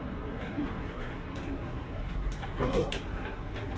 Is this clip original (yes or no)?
no